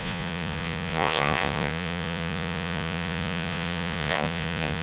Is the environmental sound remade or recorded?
remade